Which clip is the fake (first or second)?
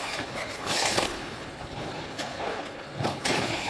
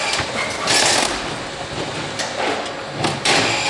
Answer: first